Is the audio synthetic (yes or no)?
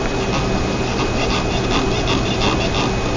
no